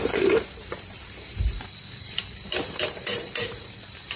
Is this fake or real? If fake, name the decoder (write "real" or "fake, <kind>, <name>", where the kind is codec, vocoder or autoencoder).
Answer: fake, vocoder, BigVGAN v2